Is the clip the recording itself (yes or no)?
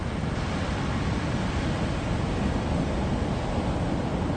yes